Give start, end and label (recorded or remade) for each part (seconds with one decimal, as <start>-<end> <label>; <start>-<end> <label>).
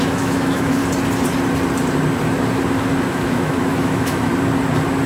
0.0-0.8 remade; 0.8-3.1 recorded; 3.1-4.3 remade; 4.3-5.1 recorded